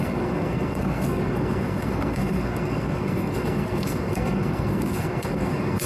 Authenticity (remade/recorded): remade